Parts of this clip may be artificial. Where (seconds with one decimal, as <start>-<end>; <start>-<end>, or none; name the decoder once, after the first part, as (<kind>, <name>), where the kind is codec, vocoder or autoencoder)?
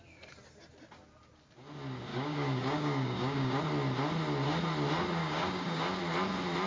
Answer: 2.1-3.6 (codec, DAC); 5.2-6.0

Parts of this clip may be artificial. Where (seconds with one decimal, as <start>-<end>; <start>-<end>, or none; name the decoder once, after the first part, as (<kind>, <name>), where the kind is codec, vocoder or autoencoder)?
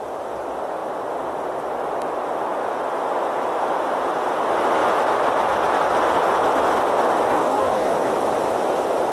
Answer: 7.3-8.1 (codec, DAC)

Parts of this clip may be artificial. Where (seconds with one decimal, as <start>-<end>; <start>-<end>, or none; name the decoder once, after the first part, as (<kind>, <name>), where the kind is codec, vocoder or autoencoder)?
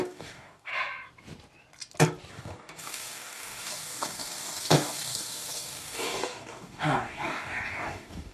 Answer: 0.0-0.7 (codec, DAC); 2.3-8.3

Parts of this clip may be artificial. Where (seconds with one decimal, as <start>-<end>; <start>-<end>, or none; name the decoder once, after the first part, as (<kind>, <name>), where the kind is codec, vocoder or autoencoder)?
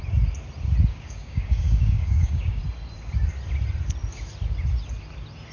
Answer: 0.9-2.6 (codec, DAC)